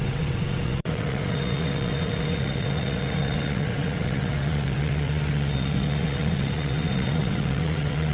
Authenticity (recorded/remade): remade